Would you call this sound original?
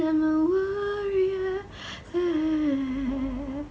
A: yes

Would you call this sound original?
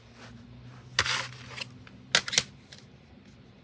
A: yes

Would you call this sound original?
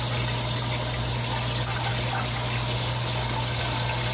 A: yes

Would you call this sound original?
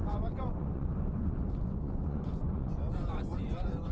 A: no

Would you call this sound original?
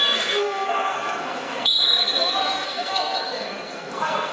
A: no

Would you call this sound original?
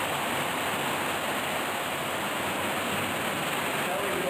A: yes